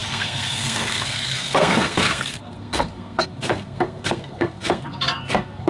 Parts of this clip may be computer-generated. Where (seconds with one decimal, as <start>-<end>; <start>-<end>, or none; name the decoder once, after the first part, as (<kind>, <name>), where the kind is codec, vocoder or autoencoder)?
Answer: 0.0-5.7 (codec, SNAC)